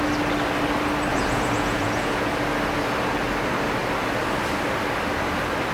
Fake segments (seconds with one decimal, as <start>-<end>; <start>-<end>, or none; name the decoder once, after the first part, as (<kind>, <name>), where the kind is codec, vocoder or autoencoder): 1.1-2.3 (vocoder, Vocos)